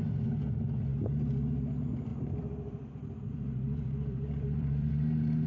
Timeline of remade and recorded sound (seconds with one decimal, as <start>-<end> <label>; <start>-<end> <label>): 0.0-2.1 recorded; 2.1-4.9 remade; 4.9-5.5 recorded